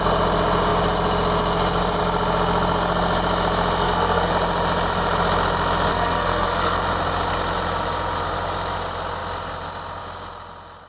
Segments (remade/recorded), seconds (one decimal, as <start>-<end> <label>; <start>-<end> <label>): 0.0-3.8 recorded; 3.8-4.3 remade; 4.3-5.9 recorded; 5.9-6.8 remade; 6.8-10.9 recorded